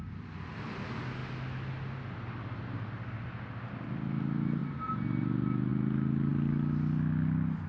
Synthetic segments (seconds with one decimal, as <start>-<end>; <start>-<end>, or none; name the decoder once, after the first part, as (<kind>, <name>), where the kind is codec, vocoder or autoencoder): none